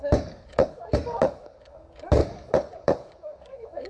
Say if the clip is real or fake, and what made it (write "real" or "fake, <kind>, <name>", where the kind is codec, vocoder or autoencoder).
fake, codec, DAC